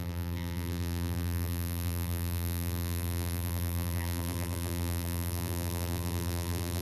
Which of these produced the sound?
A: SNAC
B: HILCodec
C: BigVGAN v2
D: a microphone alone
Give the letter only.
C